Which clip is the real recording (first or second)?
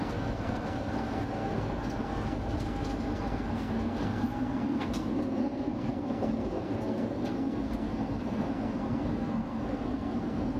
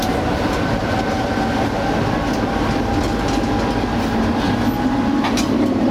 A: second